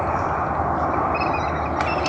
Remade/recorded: recorded